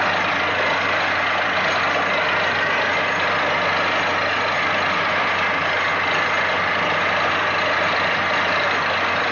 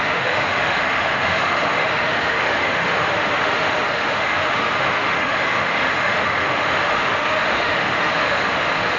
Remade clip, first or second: second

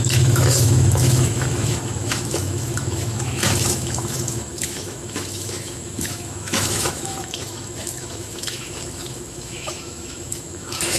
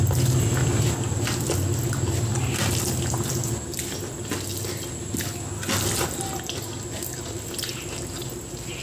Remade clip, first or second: first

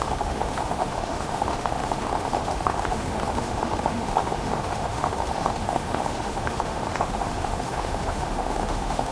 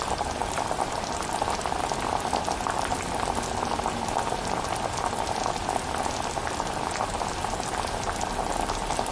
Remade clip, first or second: first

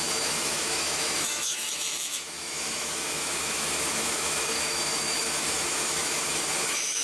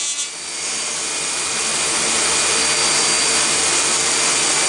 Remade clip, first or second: first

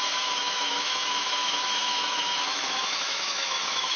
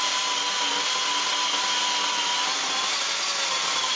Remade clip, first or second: first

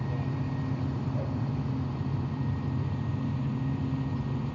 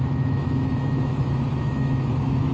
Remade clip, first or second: second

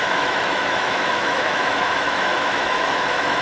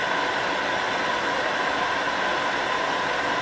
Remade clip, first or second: first